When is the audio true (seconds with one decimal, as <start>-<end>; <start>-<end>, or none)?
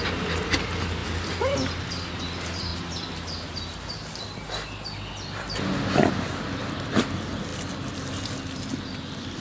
0.0-9.4